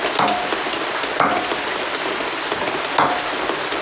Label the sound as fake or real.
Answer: real